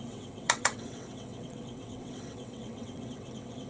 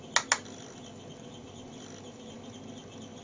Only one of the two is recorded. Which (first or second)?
second